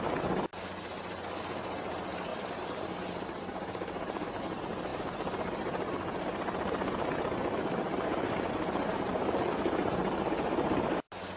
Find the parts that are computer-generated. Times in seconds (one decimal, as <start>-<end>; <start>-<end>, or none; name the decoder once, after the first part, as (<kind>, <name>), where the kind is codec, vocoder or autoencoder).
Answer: 2.3-4.4 (vocoder, BigVGAN v2)